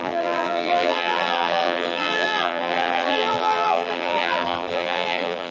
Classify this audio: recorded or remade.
remade